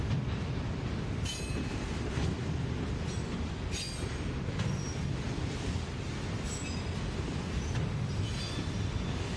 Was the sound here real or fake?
real